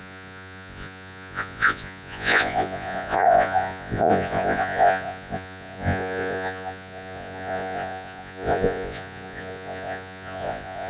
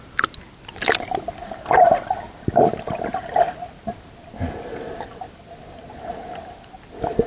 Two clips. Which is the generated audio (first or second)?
first